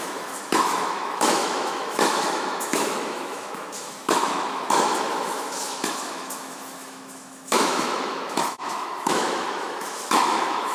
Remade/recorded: remade